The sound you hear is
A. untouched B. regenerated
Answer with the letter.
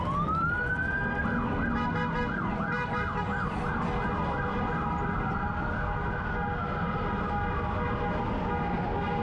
A